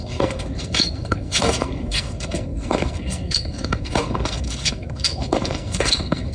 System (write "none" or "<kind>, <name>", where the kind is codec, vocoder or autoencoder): codec, SNAC